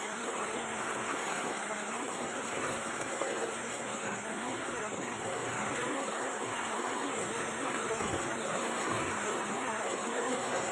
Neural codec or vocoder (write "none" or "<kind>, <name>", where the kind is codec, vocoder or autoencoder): codec, SNAC